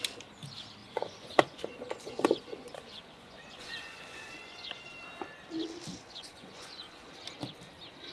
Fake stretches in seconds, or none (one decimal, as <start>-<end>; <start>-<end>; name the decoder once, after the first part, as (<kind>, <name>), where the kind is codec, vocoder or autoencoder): 0.8-4.8 (vocoder, Vocos); 5.9-7.1